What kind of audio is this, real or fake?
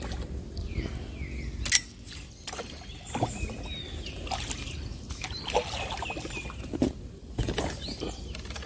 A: real